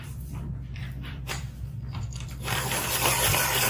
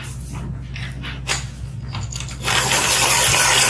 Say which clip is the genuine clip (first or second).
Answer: second